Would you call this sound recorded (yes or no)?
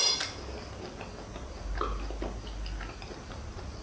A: yes